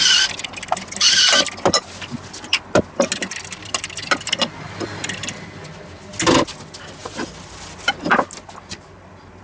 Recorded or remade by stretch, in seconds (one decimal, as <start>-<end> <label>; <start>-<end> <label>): 0.0-9.4 recorded